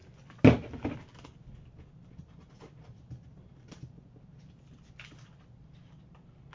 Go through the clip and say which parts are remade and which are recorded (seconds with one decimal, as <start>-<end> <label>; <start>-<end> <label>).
0.0-6.5 recorded